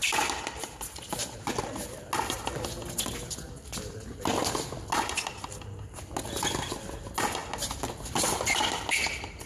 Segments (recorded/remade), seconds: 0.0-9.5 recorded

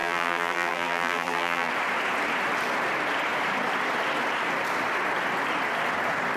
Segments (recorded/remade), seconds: 0.0-1.7 remade; 1.7-6.4 recorded

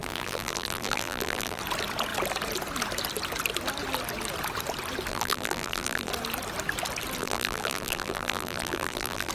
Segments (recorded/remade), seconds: 0.0-1.6 remade; 1.6-5.1 recorded; 5.1-6.1 remade; 6.1-7.2 recorded; 7.2-9.3 remade

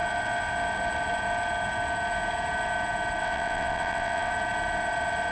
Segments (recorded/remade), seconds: 0.0-3.2 recorded; 3.2-4.3 remade; 4.3-5.3 recorded

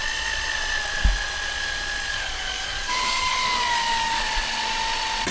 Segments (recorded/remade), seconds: 0.0-2.1 recorded; 2.1-4.2 remade; 4.2-5.3 recorded